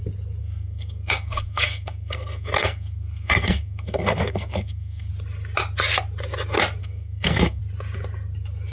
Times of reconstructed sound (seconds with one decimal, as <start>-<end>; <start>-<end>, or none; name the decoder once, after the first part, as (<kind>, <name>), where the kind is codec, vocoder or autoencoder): 0.4-5.1 (codec, SNAC); 6.8-7.6